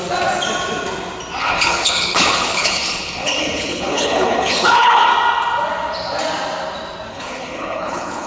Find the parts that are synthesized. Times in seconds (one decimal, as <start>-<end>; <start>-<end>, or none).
1.4-5.1; 7.1-8.3